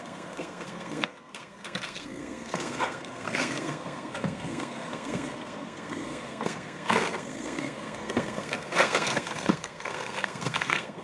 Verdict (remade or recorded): remade